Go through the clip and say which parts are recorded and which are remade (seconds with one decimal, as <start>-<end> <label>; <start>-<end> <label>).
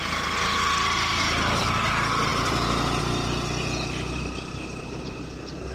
0.0-5.7 remade